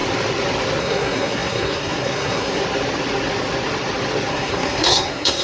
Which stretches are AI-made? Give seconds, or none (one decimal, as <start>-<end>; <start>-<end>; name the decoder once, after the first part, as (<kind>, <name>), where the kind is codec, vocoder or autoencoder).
0.8-2.6 (codec, SNAC); 4.3-5.4